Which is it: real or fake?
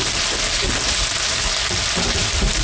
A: real